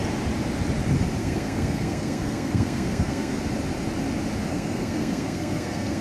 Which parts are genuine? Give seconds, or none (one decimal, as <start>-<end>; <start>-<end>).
0.0-1.2; 3.4-4.5